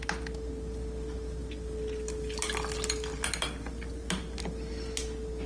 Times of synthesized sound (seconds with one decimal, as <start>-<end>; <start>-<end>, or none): none